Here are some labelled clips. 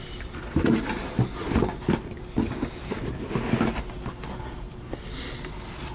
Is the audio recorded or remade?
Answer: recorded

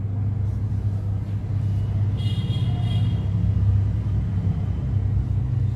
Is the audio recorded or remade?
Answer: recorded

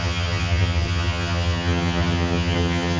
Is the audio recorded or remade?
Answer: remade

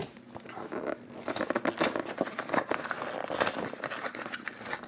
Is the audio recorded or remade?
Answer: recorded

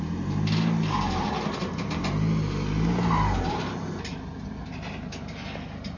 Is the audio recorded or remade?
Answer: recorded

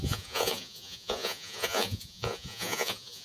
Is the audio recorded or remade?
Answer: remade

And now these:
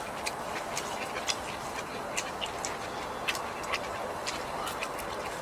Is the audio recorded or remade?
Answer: recorded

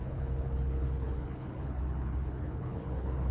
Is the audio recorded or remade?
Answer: remade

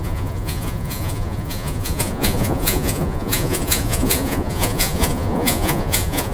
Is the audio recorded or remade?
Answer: remade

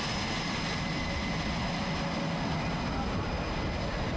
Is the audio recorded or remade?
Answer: recorded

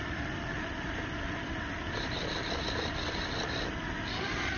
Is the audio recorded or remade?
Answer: recorded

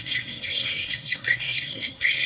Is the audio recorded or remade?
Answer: remade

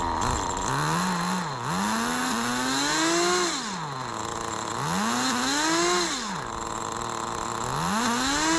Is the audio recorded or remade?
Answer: recorded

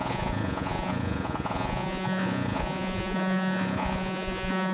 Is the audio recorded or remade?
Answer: remade